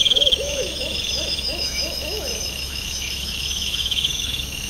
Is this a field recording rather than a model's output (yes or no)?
no